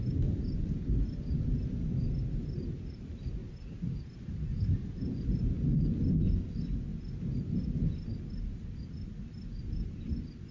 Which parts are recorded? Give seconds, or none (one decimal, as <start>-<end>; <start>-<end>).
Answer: 0.0-10.5